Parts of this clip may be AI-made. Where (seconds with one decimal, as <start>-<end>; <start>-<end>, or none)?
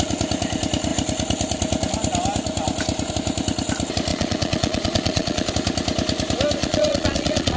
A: 4.1-5.5; 6.6-7.6